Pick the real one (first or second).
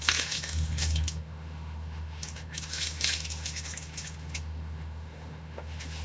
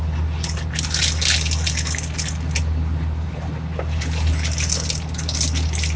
second